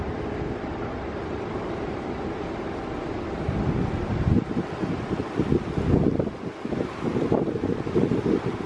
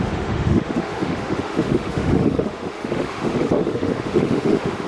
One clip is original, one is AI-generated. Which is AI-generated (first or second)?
second